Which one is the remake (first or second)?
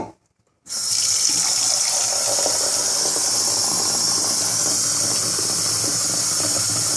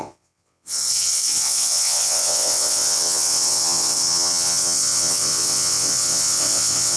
second